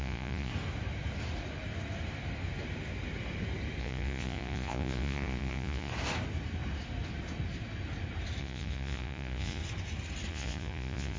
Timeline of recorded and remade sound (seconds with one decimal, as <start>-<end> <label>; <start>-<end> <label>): 0.0-0.5 remade; 0.5-3.8 recorded; 3.8-5.9 remade; 5.9-8.4 recorded; 8.4-9.6 remade; 9.6-10.3 recorded; 10.3-11.2 remade